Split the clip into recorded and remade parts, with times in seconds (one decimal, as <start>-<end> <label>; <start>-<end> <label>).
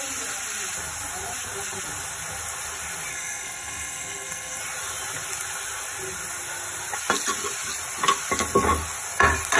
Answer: 0.0-3.1 recorded; 3.1-4.6 remade; 4.6-9.6 recorded